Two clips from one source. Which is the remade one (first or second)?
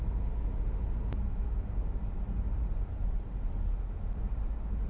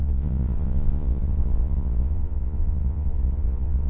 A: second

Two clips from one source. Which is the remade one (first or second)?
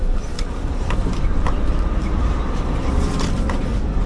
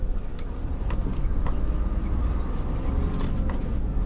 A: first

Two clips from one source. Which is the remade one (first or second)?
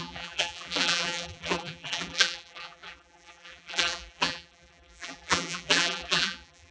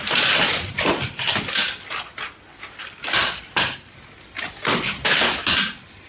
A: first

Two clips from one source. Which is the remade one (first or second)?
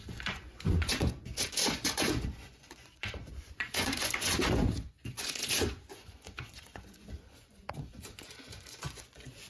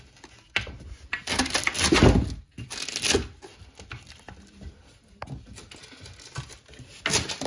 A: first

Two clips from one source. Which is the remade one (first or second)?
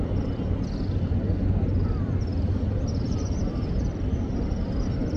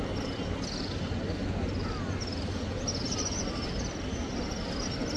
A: first